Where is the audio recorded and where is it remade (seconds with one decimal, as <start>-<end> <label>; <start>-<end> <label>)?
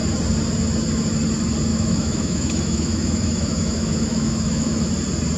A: 0.0-1.7 recorded; 1.7-4.9 remade; 4.9-5.4 recorded